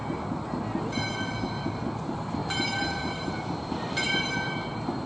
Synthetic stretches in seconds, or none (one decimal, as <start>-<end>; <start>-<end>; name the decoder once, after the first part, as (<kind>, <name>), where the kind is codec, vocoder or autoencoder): 2.4-5.1 (vocoder, BigVGAN v2)